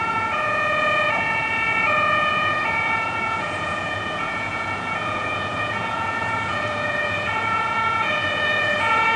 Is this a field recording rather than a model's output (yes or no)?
no